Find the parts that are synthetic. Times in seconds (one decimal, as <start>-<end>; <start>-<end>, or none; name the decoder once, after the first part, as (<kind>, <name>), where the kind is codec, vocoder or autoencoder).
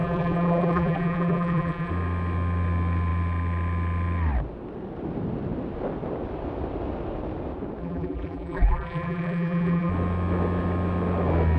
0.0-1.9 (vocoder, BigVGAN v2); 7.8-9.9